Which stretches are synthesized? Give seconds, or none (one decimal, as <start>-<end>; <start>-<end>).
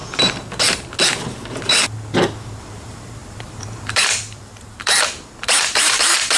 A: 2.6-6.4